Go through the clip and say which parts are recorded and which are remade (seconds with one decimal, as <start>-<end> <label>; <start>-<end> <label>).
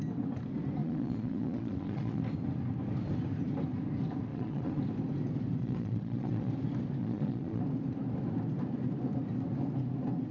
0.0-0.8 recorded; 0.8-2.2 remade; 2.2-4.3 recorded; 4.3-4.8 remade; 4.8-5.6 recorded; 5.6-6.5 remade; 6.5-7.0 recorded; 7.0-7.6 remade; 7.6-10.3 recorded